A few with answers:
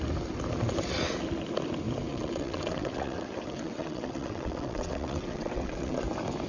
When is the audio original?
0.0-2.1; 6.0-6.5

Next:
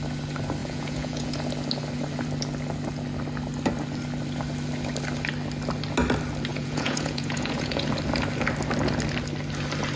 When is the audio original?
0.0-0.6; 1.4-6.5; 7.9-10.0

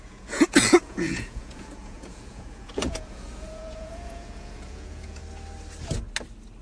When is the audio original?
5.2-6.6